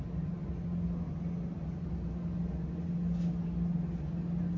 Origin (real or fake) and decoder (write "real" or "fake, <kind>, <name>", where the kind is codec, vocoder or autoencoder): real